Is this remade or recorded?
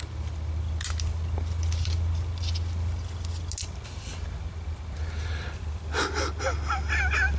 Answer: recorded